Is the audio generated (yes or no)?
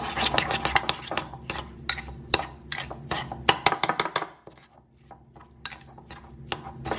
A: no